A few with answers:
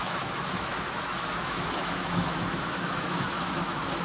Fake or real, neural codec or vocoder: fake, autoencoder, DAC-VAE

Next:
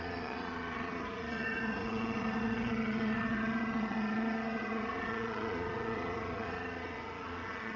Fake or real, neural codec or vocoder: fake, vocoder, Vocos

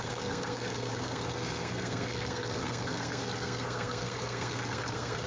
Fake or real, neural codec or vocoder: fake, codec, SNAC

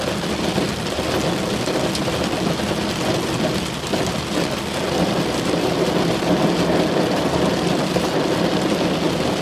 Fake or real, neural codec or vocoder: real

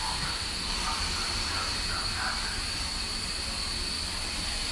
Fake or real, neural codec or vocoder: real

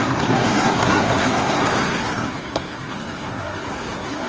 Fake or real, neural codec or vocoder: fake, codec, SNAC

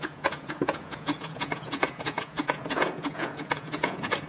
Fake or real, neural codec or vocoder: fake, vocoder, Vocos